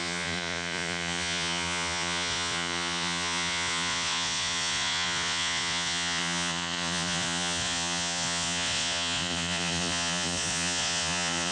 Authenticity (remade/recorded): remade